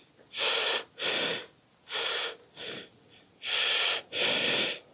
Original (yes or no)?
yes